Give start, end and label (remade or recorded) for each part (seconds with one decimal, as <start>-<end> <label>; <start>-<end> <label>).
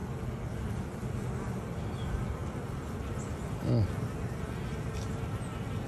0.0-5.9 recorded